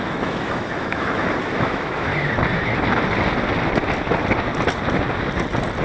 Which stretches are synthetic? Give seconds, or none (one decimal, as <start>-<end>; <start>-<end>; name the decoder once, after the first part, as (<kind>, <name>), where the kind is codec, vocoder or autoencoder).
0.0-2.1 (autoencoder, DAC-VAE)